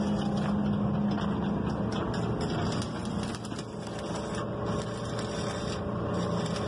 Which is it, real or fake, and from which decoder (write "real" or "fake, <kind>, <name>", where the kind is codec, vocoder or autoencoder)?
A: real